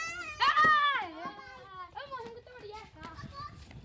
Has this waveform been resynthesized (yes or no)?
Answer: no